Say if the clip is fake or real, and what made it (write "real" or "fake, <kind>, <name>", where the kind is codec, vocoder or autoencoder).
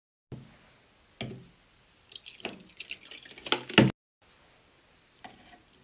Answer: real